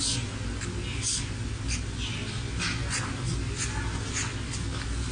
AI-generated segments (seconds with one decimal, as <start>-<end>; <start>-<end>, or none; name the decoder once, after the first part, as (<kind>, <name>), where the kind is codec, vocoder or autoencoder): none